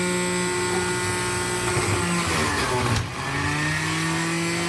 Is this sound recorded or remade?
recorded